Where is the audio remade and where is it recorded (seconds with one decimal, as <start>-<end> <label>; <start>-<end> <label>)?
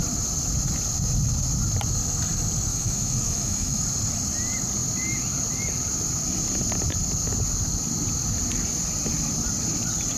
0.0-2.7 recorded; 2.7-3.8 remade; 3.8-10.2 recorded